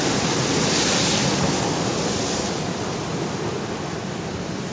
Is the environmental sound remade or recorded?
recorded